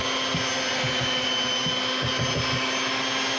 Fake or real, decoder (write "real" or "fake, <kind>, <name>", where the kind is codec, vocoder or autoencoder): real